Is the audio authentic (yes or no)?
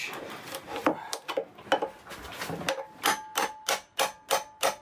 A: yes